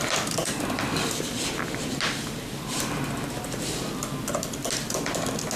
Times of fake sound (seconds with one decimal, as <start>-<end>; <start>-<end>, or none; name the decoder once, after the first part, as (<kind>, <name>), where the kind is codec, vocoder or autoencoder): none